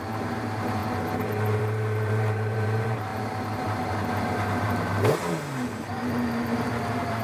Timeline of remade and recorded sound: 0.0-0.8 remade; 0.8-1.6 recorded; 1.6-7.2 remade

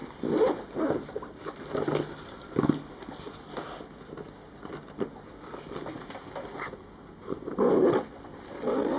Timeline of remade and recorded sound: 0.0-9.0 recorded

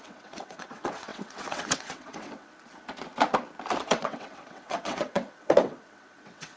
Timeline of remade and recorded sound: 0.0-2.5 remade; 2.5-3.8 recorded; 3.8-6.6 remade

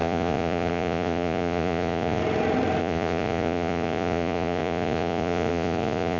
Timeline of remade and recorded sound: 0.0-2.2 remade; 2.2-2.8 recorded; 2.8-6.2 remade

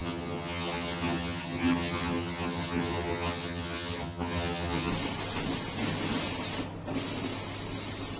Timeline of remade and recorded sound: 0.0-4.9 remade; 4.9-8.2 recorded

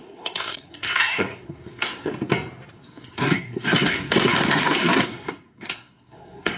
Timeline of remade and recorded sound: 0.0-2.1 remade; 2.1-2.7 recorded; 2.7-6.6 remade

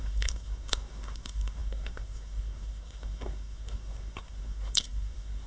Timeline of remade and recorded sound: 0.0-5.5 remade